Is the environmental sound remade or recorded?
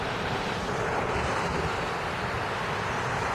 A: recorded